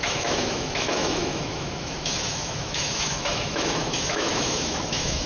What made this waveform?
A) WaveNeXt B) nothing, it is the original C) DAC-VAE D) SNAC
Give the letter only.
C